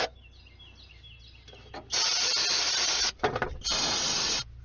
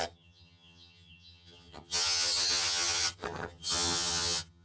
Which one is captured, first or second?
first